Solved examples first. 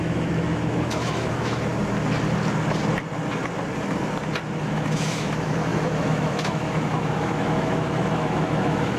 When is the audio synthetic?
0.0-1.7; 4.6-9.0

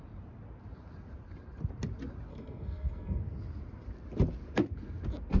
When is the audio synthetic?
2.3-3.2

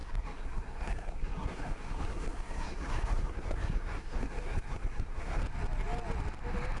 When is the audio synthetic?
0.0-5.4

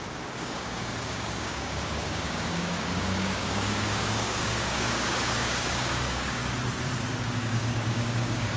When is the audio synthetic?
0.0-6.4; 7.2-8.6

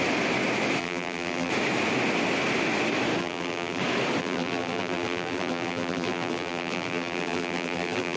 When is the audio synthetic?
0.8-1.5; 3.2-3.8; 4.2-8.2

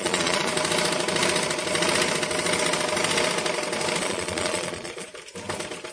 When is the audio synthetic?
0.0-0.5; 4.0-5.1

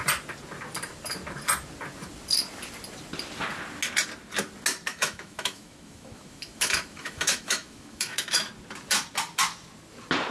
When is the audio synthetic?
4.9-8.5

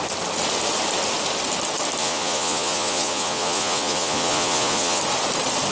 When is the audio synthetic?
2.0-5.0